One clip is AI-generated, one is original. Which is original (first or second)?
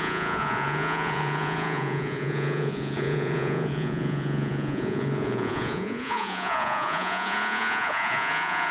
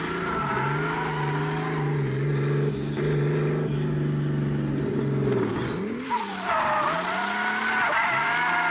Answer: second